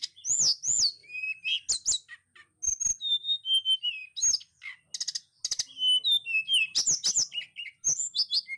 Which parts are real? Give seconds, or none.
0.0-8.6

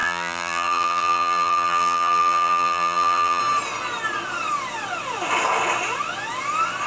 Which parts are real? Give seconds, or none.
3.4-6.9

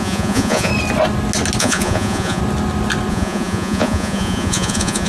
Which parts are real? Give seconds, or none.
0.7-1.6; 2.4-3.1

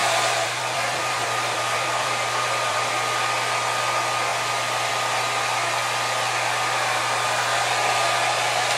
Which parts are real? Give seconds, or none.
2.9-8.8

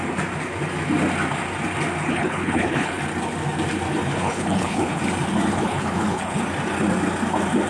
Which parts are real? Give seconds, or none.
0.0-2.0; 3.0-4.1; 5.0-5.5; 6.4-7.7

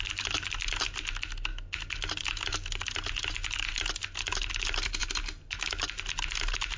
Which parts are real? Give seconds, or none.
0.0-6.8